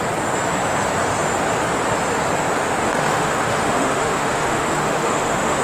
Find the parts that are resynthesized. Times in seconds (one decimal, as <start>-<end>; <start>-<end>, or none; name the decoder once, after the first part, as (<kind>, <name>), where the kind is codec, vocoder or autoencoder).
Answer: 2.8-5.6 (autoencoder, DAC-VAE)